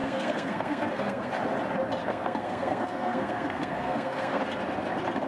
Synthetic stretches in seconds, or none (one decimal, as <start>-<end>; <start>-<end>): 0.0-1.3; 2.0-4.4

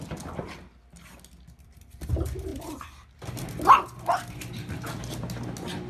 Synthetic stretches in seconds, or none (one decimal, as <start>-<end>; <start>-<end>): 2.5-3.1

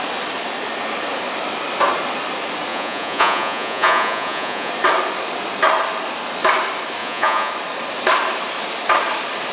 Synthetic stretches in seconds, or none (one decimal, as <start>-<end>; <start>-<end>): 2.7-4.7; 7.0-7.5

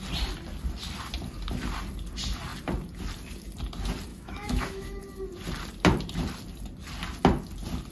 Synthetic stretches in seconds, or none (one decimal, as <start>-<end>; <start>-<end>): 4.1-5.0

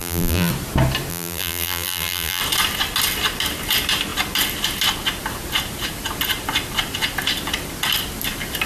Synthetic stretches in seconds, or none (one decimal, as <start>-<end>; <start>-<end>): 0.0-0.5; 1.1-2.4

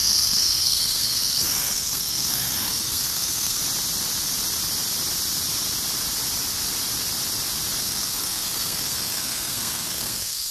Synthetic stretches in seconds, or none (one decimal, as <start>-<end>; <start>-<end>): 0.0-3.6; 7.8-10.5

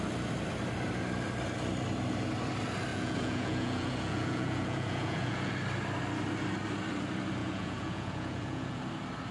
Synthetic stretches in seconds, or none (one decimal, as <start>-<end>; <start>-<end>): 2.9-5.5; 7.4-8.8

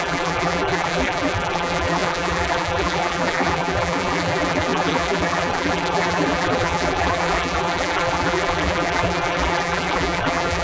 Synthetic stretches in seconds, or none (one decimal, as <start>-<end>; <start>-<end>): 0.0-10.6